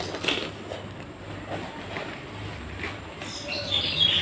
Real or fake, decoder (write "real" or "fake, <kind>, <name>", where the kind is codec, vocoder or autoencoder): real